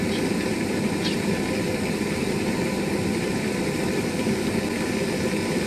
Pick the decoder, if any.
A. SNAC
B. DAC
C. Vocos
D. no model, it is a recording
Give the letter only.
D